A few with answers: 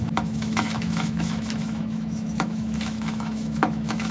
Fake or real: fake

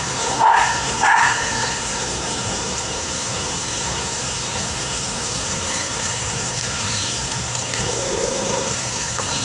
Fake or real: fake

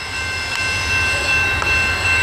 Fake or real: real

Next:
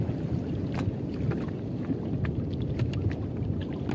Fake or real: real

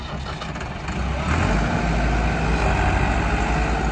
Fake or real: real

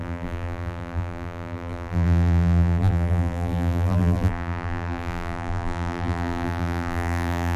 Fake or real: fake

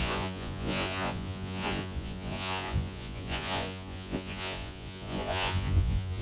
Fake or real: fake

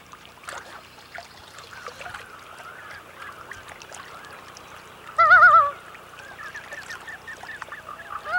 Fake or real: real